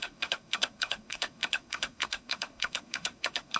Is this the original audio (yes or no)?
no